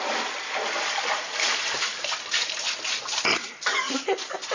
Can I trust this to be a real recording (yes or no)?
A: yes